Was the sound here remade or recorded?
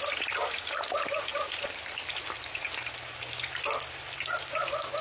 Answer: recorded